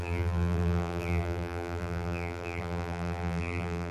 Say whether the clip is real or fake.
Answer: fake